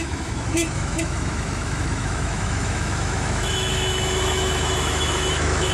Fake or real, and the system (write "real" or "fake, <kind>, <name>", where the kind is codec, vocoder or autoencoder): fake, autoencoder, DAC-VAE